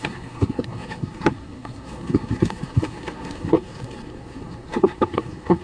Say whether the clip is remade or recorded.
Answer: remade